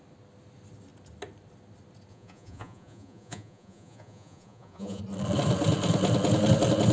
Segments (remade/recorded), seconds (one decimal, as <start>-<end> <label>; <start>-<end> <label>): 0.0-2.1 recorded; 2.1-5.0 remade; 5.0-6.9 recorded